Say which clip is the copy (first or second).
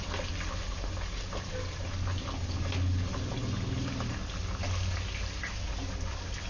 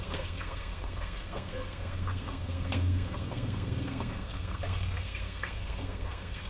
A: second